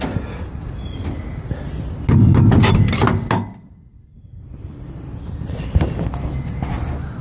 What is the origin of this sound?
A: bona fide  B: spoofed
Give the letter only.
A